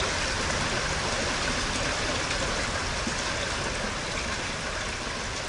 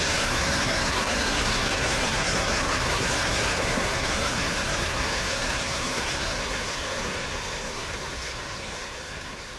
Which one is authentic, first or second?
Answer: first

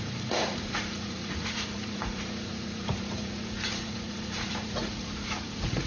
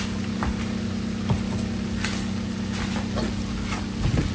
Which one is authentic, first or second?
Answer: second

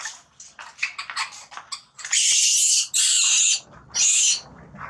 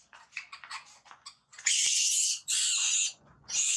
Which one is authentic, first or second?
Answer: first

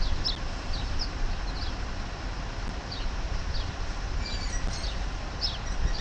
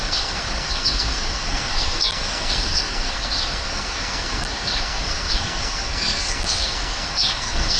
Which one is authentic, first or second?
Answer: first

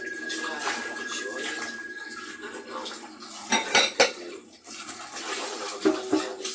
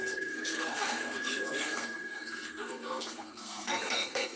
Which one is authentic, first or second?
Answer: first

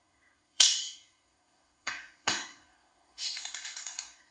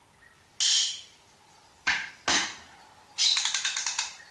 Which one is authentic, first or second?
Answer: second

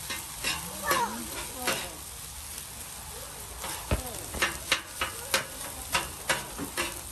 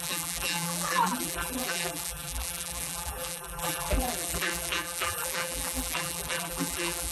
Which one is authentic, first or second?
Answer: first